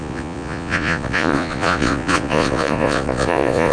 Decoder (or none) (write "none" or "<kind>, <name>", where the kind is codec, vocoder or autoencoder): vocoder, Vocos